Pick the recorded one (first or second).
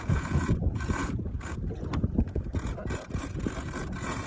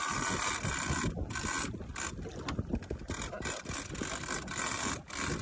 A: second